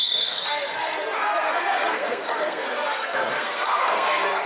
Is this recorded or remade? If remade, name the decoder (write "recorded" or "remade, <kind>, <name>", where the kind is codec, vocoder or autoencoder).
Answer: remade, codec, SNAC